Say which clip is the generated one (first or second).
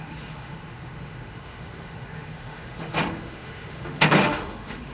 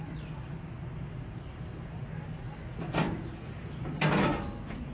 first